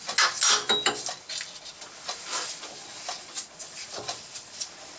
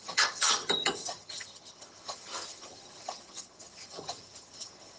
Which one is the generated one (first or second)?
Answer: second